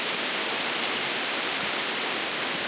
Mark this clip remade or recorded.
recorded